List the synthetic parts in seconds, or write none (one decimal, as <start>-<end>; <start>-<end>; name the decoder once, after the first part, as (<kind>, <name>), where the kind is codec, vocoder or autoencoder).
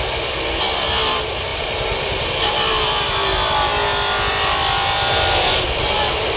0.0-3.7 (vocoder, BigVGAN v2); 4.3-6.4